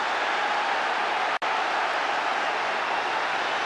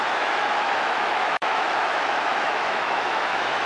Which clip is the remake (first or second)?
second